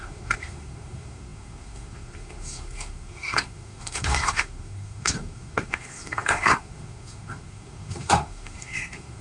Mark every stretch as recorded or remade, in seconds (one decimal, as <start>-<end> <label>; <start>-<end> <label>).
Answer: 0.0-9.2 remade